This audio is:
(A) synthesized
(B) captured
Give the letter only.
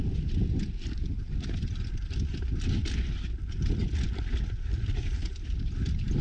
B